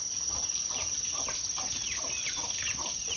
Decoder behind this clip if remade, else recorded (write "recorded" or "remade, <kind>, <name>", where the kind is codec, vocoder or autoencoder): recorded